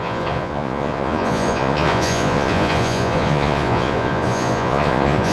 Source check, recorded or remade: remade